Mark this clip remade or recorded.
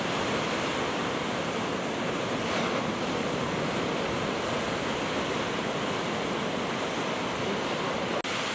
recorded